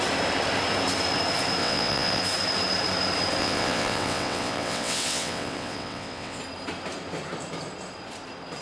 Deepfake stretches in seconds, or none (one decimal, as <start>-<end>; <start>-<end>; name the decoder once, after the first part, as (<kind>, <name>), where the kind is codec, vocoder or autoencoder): 1.6-2.2 (vocoder, WaveNeXt); 3.4-6.4